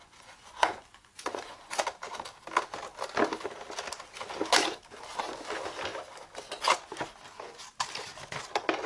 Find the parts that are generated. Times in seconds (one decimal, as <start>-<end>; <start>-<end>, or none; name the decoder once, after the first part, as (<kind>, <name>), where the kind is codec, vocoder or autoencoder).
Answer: 0.0-1.8 (vocoder, Vocos)